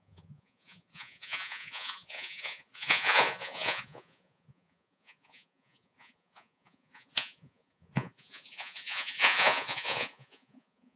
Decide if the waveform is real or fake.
fake